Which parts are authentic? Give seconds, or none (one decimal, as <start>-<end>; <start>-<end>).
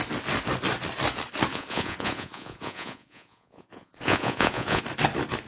0.0-1.5; 4.8-5.5